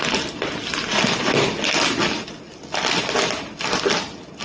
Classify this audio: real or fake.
real